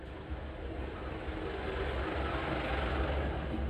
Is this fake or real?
real